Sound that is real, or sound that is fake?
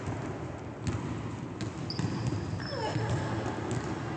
real